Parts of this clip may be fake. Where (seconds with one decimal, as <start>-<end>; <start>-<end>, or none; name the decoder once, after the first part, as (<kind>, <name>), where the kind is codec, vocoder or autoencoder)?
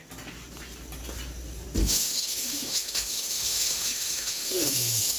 1.8-5.2 (autoencoder, DAC-VAE)